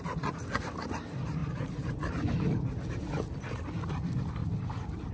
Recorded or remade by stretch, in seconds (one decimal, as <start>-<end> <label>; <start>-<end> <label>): 0.0-5.1 recorded